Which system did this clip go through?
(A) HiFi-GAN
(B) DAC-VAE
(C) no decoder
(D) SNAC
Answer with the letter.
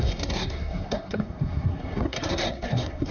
D